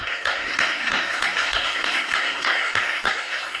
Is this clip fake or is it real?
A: fake